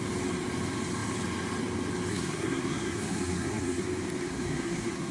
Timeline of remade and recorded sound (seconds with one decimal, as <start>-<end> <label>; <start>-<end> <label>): 0.0-2.1 recorded; 2.1-3.8 remade; 3.8-4.2 recorded; 4.2-5.1 remade